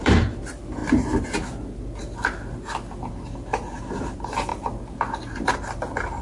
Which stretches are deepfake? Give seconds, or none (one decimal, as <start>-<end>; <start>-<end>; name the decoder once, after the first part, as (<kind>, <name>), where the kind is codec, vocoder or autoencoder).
0.0-0.8 (vocoder, BigVGAN v2); 3.1-4.5; 5.5-6.2